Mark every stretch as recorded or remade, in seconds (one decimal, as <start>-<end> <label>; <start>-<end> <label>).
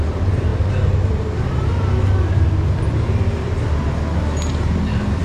0.0-4.5 recorded; 4.5-5.2 remade